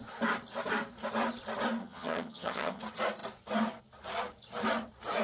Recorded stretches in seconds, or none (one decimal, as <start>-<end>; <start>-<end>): 0.0-1.8; 2.8-5.2